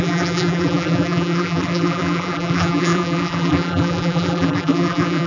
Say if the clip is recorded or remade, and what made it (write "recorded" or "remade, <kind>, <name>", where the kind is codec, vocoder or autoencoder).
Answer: remade, vocoder, BigVGAN v2